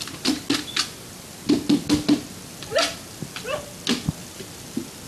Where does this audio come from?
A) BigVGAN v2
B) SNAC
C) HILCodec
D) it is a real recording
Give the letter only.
D